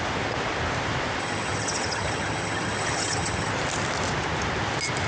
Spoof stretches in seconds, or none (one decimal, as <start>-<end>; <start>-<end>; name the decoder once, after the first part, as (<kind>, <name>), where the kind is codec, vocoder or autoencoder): 1.2-3.5 (vocoder, HiFi-GAN)